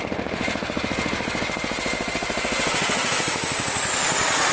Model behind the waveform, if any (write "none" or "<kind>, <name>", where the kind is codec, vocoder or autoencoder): none